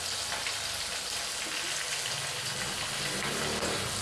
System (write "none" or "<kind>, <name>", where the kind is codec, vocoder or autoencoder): none